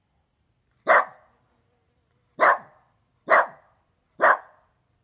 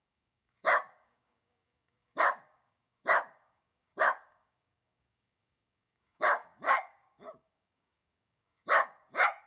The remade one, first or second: second